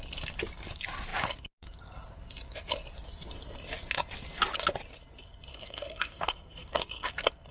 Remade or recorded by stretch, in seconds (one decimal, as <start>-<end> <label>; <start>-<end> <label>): 0.0-5.5 recorded; 5.5-7.1 remade; 7.1-7.5 recorded